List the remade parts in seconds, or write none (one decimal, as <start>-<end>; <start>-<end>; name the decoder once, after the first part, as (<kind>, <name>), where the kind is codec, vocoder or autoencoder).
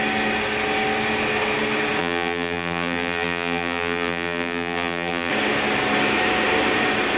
2.0-5.3 (vocoder, BigVGAN v2)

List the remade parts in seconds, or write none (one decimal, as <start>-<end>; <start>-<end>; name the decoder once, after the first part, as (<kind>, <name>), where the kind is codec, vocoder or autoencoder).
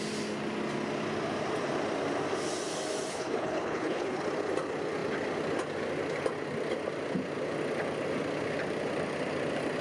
3.1-4.2 (codec, HILCodec)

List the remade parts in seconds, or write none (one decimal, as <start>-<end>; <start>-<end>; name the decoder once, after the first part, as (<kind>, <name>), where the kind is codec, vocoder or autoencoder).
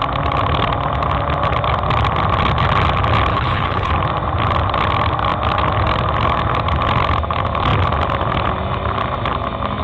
3.3-3.9 (codec, HILCodec)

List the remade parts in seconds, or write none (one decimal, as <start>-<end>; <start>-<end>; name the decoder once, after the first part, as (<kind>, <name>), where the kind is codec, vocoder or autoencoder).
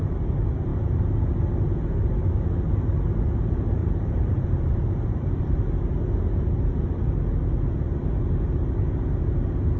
3.8-5.6 (vocoder, BigVGAN v2)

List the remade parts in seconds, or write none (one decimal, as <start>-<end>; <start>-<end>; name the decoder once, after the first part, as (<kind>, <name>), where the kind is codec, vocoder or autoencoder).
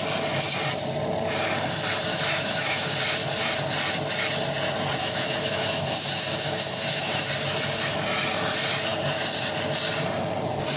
2.1-2.9 (autoencoder, DAC-VAE); 5.0-7.3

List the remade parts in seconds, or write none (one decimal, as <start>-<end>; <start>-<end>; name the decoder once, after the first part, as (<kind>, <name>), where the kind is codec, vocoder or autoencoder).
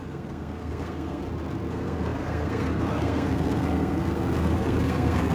0.0-1.2 (codec, SNAC); 1.7-5.3